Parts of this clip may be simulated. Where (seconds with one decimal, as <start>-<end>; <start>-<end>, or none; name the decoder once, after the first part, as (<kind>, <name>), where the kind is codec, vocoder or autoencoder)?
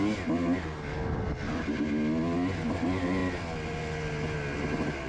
none